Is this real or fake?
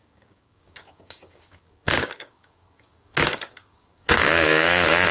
fake